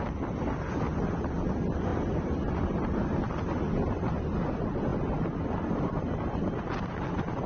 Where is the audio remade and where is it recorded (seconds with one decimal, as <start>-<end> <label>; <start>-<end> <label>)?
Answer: 0.0-7.5 recorded